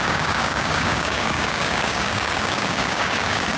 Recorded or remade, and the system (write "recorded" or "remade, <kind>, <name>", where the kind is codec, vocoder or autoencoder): remade, codec, DAC